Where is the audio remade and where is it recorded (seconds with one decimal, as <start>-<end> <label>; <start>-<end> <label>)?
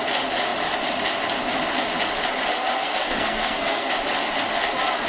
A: 0.0-2.8 recorded; 2.8-3.9 remade; 3.9-5.1 recorded